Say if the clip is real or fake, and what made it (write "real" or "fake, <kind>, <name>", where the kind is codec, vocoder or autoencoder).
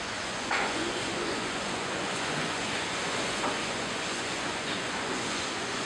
fake, vocoder, Vocos